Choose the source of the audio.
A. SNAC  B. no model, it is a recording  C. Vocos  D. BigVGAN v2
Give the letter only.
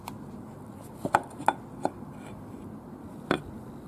B